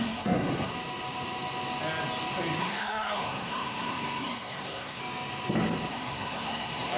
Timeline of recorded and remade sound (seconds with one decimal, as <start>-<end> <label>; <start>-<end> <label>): 0.0-0.7 remade; 0.7-2.6 recorded; 2.6-5.0 remade; 5.0-5.9 recorded; 5.9-7.0 remade

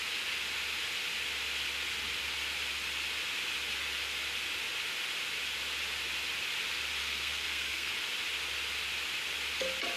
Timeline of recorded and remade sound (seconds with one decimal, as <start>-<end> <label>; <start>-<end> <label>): 0.0-7.0 recorded; 7.0-7.9 remade; 7.9-10.0 recorded

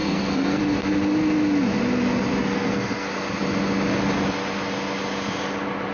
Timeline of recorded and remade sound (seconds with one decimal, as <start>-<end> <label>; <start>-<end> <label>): 0.0-0.6 remade; 0.6-2.4 recorded; 2.4-3.1 remade; 3.1-5.9 recorded

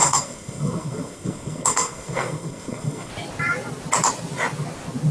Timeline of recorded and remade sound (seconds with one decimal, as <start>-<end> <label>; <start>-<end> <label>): 0.0-3.1 remade; 3.1-5.1 recorded